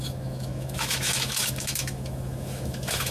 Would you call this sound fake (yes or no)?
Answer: yes